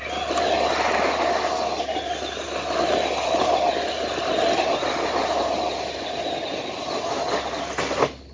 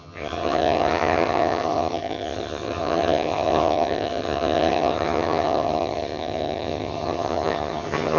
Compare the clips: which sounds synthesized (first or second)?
second